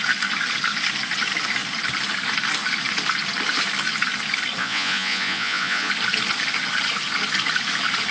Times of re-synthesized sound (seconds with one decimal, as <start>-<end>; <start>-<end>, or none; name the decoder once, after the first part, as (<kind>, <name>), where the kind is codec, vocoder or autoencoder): 4.6-5.9 (vocoder, Vocos)